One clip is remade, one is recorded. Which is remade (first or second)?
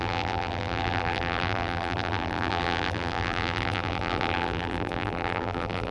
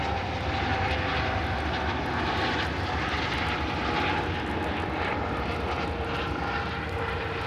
first